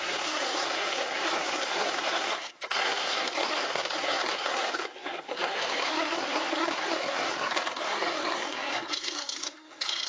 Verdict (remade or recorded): remade